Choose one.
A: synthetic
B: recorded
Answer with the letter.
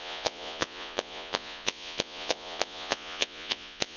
A